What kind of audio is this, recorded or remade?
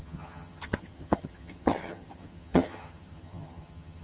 remade